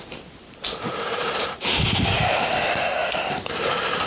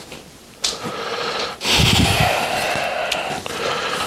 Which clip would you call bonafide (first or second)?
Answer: second